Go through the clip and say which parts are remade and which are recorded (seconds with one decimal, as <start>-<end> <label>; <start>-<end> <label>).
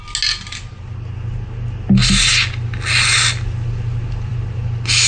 0.0-5.1 recorded